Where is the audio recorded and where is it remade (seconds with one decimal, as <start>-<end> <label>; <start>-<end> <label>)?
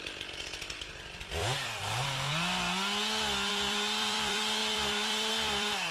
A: 0.0-2.3 remade; 2.3-3.5 recorded; 3.5-5.9 remade